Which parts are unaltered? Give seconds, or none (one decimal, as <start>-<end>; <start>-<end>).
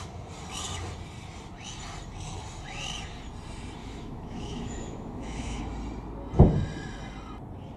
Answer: 0.0-3.8; 5.6-7.8